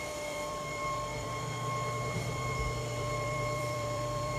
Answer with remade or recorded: remade